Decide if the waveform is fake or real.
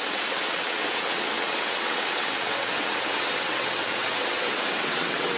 fake